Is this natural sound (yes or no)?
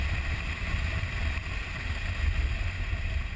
yes